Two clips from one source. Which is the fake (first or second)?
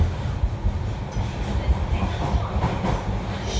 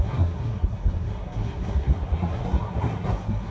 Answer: second